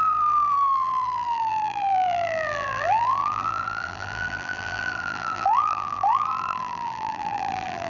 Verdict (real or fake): fake